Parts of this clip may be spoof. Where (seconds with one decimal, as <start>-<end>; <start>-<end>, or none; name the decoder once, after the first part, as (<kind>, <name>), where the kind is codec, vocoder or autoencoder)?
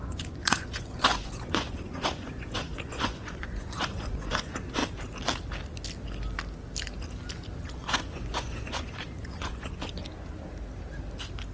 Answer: 0.0-4.8 (vocoder, Vocos); 7.7-10.0